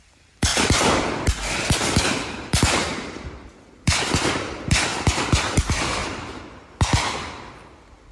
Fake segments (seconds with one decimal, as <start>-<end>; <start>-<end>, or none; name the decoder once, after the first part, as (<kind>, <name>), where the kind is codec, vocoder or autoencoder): 0.0-0.5 (vocoder, BigVGAN v2); 2.0-4.9; 5.6-6.0; 7.3-8.1

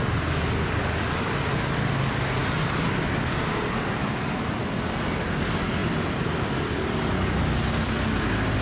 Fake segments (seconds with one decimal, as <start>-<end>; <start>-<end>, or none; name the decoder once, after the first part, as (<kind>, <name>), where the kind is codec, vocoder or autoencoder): none

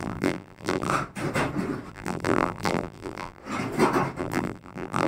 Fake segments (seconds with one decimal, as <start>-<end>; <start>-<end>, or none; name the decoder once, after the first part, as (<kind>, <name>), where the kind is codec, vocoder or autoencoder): 0.0-0.9 (vocoder, BigVGAN v2); 1.9-3.4; 4.2-5.1

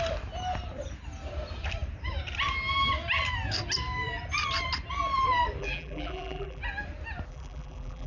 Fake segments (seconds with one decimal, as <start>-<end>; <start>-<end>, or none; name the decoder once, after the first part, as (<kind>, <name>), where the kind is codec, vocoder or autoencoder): 5.6-6.6 (vocoder, BigVGAN v2); 7.3-8.1

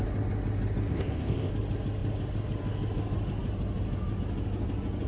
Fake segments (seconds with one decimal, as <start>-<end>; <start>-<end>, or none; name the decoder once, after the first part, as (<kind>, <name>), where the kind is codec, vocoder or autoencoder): 0.9-1.5 (codec, ZipCodec)